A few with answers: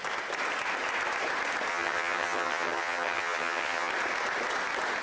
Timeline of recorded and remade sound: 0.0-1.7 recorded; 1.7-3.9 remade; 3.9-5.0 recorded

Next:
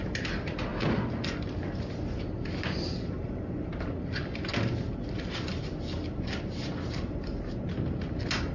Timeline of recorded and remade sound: 0.0-8.5 recorded